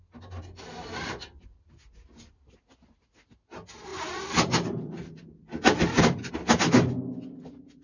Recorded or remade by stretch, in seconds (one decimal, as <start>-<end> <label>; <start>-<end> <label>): 0.0-3.9 recorded; 3.9-6.3 remade; 6.3-7.8 recorded